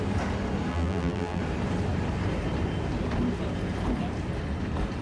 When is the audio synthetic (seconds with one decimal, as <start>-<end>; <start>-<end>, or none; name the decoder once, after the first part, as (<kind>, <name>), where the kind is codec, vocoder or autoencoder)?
0.7-1.4 (vocoder, BigVGAN v2)